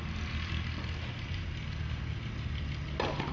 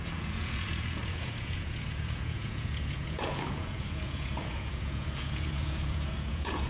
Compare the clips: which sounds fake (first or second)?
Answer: second